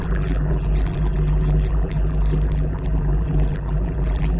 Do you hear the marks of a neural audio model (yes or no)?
yes